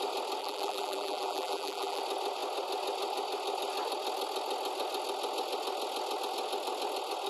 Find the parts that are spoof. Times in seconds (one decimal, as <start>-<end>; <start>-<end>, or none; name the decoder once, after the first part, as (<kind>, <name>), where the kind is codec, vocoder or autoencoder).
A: 0.4-2.0 (vocoder, BigVGAN v2)